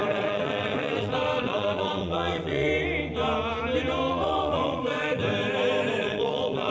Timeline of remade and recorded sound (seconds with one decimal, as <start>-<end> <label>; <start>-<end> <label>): 0.0-2.7 remade; 2.7-4.1 recorded; 4.1-5.2 remade; 5.2-6.0 recorded; 6.0-6.7 remade